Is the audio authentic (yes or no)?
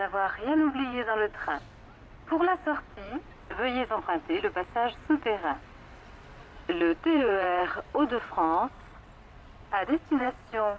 no